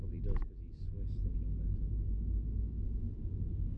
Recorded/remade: recorded